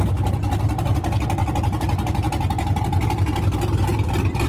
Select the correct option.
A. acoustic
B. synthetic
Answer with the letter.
A